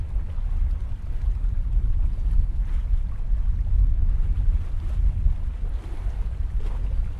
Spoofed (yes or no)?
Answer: no